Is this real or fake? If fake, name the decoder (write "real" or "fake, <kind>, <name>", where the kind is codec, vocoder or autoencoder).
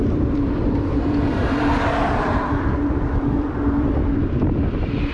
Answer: fake, vocoder, BigVGAN v2